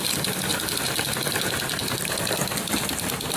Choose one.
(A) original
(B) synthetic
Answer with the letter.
A